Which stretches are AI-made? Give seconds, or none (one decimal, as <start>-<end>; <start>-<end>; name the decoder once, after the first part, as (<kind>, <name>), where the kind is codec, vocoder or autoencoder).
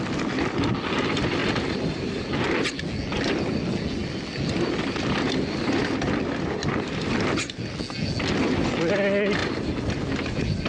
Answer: 1.4-2.7 (vocoder, BigVGAN v2); 4.0-7.6